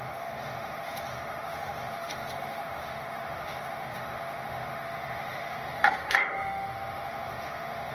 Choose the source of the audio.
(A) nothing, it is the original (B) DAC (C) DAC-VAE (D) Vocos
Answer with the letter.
C